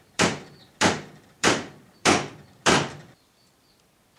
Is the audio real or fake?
fake